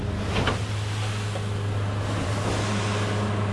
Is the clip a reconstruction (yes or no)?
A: no